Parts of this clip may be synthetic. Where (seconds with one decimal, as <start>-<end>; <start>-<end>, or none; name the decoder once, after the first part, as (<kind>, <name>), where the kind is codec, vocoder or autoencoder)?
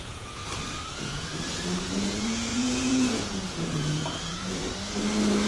0.0-0.4 (vocoder, Vocos); 0.9-1.3; 1.8-4.6